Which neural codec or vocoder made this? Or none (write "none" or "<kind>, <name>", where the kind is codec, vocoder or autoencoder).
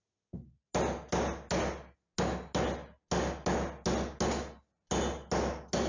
none